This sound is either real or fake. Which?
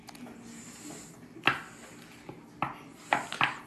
real